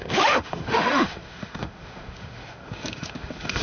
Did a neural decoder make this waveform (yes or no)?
yes